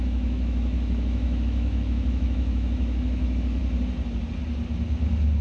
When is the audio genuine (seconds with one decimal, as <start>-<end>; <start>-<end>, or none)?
3.6-5.4